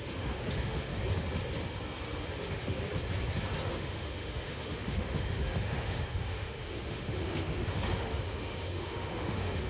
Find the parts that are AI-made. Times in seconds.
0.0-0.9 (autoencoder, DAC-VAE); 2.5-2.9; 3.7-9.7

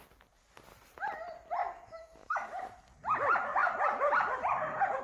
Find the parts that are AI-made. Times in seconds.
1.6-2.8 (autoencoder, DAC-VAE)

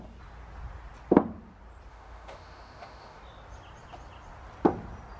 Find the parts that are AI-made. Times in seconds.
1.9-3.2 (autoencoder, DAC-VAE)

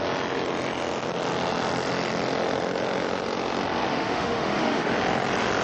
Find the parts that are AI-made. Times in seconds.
3.9-4.9 (autoencoder, DAC-VAE)